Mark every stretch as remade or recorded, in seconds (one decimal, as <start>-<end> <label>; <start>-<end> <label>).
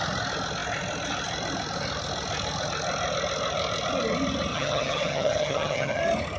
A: 0.0-4.5 recorded; 4.5-6.0 remade; 6.0-6.4 recorded